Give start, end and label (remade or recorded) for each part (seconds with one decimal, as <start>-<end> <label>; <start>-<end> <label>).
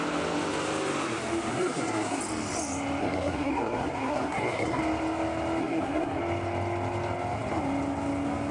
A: 0.0-1.5 recorded; 1.5-2.2 remade; 2.2-3.0 recorded; 3.0-4.8 remade; 4.8-5.6 recorded; 5.6-6.2 remade; 6.2-8.5 recorded